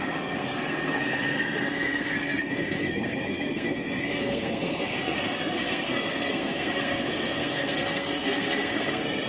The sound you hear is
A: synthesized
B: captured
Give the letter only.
A